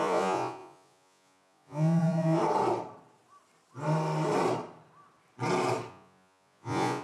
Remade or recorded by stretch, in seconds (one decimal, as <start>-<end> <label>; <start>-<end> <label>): 0.0-2.4 remade; 2.4-5.9 recorded; 5.9-7.0 remade